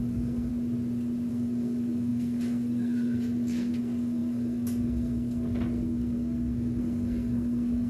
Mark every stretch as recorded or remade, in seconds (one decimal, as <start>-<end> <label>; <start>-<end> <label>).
0.0-0.5 remade; 0.5-1.3 recorded; 1.3-7.9 remade